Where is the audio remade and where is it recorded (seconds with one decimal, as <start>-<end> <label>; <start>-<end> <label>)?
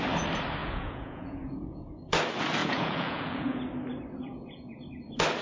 0.0-0.6 recorded; 0.6-1.9 remade; 1.9-2.6 recorded; 2.6-3.6 remade; 3.6-4.2 recorded; 4.2-4.8 remade; 4.8-5.4 recorded